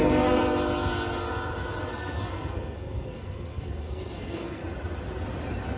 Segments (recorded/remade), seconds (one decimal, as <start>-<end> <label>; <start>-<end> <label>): 0.0-0.4 remade; 0.4-1.9 recorded; 1.9-4.6 remade; 4.6-5.8 recorded